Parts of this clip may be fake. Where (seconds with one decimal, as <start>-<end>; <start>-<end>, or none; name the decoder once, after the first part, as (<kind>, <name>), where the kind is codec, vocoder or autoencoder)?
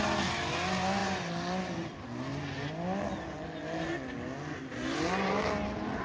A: none